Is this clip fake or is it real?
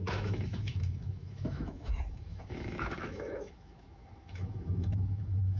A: fake